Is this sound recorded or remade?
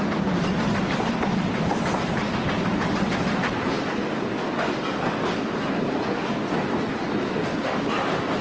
recorded